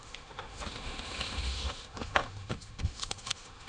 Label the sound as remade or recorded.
remade